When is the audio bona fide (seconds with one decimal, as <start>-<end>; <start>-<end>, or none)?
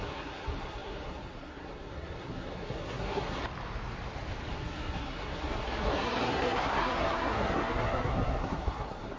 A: 3.4-4.5